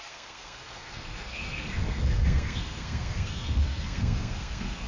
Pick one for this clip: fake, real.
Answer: fake